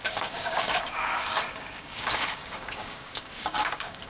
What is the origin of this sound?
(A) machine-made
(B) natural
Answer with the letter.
A